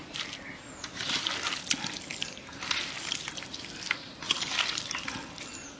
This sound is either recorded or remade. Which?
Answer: recorded